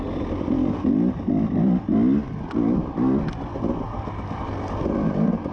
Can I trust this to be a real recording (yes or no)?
yes